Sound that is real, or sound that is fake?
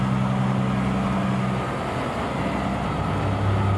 real